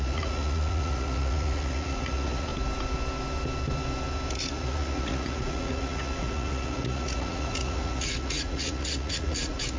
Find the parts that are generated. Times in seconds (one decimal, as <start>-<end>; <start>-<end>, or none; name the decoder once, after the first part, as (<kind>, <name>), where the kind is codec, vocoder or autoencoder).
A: 0.0-2.5 (vocoder, Vocos); 4.3-9.8